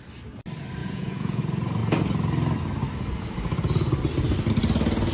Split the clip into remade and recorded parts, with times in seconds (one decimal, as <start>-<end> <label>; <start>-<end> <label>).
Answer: 0.0-0.8 recorded; 0.8-1.4 remade; 1.4-5.1 recorded